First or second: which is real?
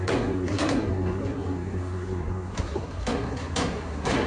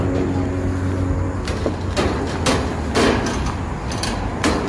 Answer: second